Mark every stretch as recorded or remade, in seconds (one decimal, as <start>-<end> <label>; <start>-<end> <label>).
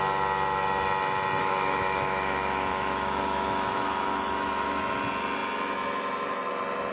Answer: 0.0-1.4 recorded; 1.4-4.8 remade; 4.8-6.9 recorded